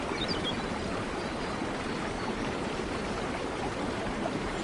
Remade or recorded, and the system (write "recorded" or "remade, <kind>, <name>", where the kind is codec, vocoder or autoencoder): remade, vocoder, BigVGAN v2